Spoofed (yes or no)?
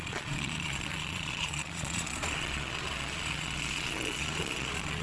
yes